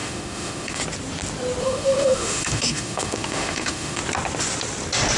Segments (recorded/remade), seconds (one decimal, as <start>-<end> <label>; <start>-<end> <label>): 0.0-0.8 remade; 0.8-1.6 recorded; 1.6-4.0 remade; 4.0-5.2 recorded